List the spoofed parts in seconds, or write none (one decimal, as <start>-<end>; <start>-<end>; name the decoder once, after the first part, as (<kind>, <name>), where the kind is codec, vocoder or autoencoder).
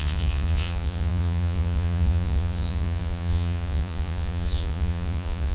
0.0-5.5 (vocoder, Vocos)